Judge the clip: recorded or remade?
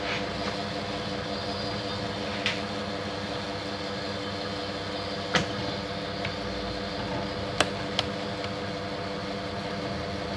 recorded